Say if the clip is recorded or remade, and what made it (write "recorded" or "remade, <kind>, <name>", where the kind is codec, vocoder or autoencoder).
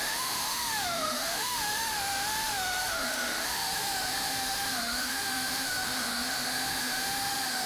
remade, autoencoder, DAC-VAE